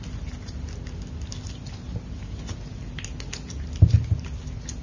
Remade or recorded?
recorded